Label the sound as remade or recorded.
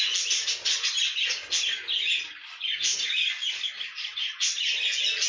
recorded